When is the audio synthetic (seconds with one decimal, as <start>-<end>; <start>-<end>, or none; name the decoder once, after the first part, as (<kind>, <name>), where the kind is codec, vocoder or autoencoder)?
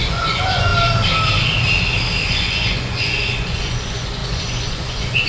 0.0-0.7 (vocoder, Vocos); 2.3-5.3